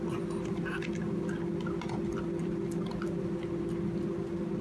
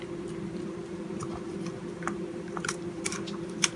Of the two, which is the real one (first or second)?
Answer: first